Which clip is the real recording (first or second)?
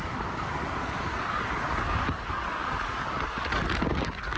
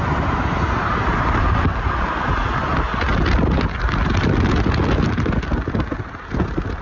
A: second